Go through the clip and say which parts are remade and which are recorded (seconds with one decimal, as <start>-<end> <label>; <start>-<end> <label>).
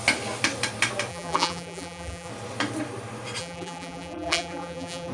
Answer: 0.0-1.1 recorded; 1.1-2.3 remade; 2.3-3.4 recorded; 3.4-5.1 remade